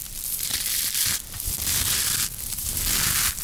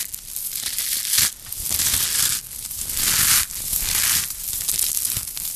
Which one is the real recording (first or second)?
second